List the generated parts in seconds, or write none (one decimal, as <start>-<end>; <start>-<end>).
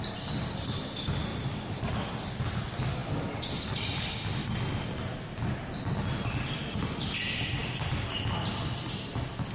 1.3-2.1